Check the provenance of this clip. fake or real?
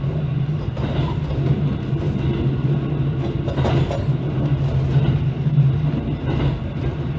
real